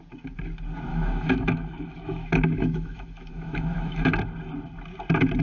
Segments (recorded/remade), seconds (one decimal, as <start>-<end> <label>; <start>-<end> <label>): 0.0-0.9 recorded; 0.9-4.1 remade; 4.1-5.4 recorded